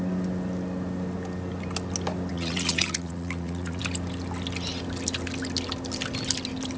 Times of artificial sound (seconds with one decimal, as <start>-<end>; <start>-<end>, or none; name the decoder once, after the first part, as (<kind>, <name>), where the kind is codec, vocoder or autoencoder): 2.3-3.8 (vocoder, Vocos)